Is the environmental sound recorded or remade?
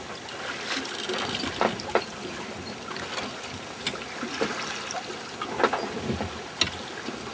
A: recorded